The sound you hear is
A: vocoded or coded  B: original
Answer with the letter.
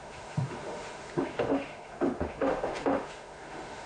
A